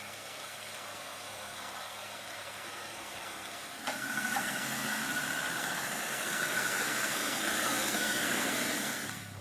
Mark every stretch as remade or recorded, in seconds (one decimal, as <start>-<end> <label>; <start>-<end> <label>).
0.0-5.0 remade; 5.0-5.5 recorded; 5.5-9.4 remade